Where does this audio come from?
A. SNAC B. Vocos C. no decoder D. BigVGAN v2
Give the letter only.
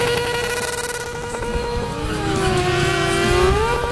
C